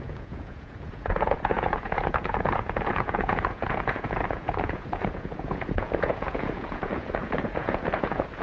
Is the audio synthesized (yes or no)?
yes